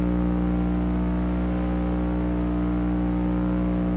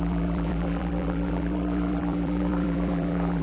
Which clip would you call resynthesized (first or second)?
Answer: second